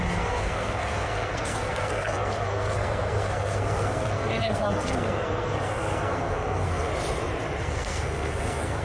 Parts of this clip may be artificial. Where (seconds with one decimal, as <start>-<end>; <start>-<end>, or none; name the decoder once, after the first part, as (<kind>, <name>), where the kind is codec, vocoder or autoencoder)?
0.0-6.9 (codec, SNAC); 7.6-8.8